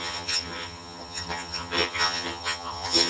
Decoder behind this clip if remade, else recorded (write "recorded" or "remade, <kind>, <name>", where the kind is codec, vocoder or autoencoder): remade, vocoder, HiFi-GAN